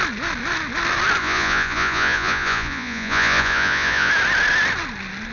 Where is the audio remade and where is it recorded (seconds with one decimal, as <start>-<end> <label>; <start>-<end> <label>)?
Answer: 0.0-1.2 recorded; 1.2-4.1 remade; 4.1-5.3 recorded